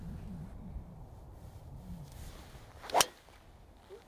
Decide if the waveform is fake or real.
real